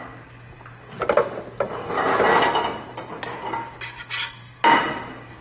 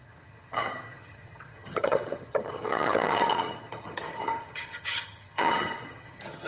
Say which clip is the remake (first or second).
second